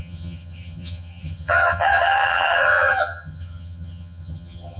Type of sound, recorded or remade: remade